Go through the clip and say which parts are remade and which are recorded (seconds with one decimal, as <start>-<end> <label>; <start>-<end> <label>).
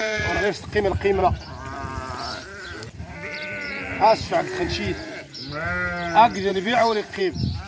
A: 0.0-0.7 remade; 0.7-6.5 recorded; 6.5-7.2 remade; 7.2-7.7 recorded